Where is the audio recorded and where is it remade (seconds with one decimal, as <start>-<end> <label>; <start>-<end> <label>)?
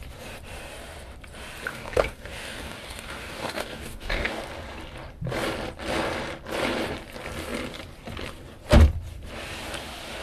0.0-1.7 recorded; 1.7-4.4 remade; 4.4-10.2 recorded